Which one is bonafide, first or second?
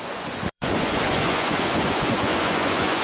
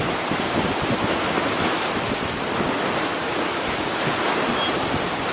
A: second